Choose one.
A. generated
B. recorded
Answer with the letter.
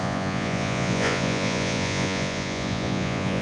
A